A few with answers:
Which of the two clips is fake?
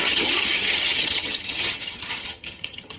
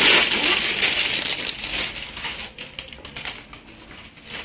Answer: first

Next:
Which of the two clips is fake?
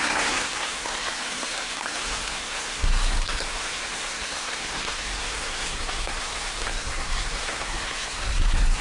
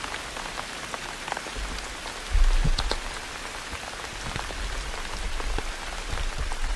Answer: first